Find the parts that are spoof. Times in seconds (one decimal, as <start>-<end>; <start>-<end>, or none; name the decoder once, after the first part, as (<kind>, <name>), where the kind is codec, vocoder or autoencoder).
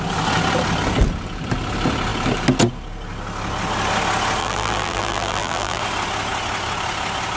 4.4-5.8 (vocoder, BigVGAN v2)